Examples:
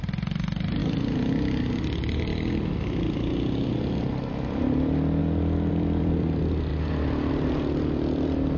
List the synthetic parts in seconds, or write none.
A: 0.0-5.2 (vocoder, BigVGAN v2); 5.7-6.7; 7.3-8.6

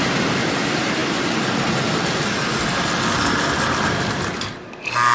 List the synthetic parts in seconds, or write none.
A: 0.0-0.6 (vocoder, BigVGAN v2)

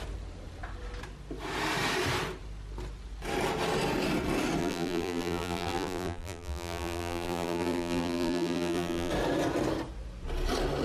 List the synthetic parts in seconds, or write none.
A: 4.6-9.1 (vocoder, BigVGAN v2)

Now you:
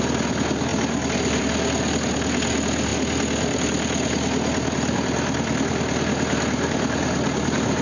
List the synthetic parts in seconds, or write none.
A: none